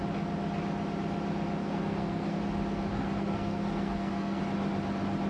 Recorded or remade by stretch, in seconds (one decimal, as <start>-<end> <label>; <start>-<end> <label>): 0.0-1.6 recorded; 1.6-2.4 remade; 2.4-2.9 recorded; 2.9-4.4 remade; 4.4-5.3 recorded